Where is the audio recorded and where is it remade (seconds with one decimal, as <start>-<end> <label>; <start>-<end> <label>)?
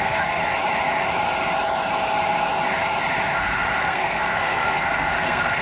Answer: 0.0-0.4 remade; 0.4-3.8 recorded; 3.8-5.6 remade